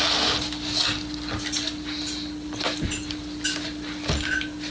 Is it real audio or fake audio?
real